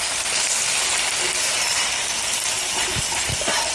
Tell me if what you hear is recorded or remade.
recorded